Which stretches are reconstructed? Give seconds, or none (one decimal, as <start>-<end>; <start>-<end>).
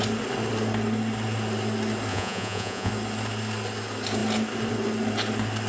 2.1-2.9